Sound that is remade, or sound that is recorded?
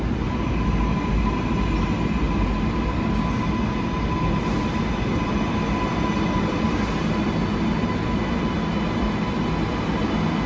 recorded